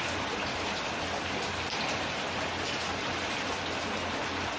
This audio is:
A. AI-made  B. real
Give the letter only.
B